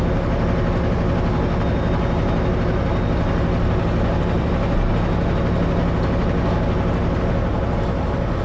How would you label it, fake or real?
real